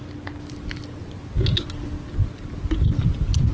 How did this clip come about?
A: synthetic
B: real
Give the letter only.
B